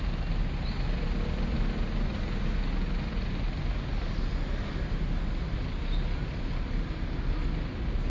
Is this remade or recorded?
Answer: recorded